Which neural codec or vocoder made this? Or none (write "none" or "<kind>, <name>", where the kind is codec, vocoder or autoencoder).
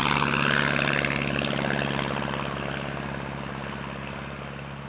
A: none